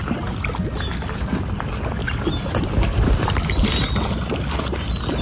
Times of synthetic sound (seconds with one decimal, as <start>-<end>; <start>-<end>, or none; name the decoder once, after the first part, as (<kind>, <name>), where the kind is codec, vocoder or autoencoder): none